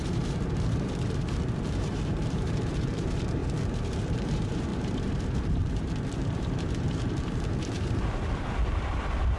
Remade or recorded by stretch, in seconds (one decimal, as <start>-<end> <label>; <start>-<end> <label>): 0.0-9.4 remade